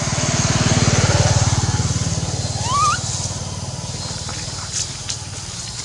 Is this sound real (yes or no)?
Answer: yes